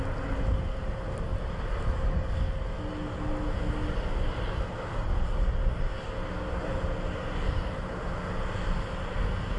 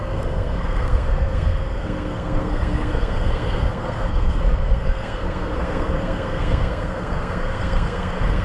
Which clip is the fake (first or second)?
second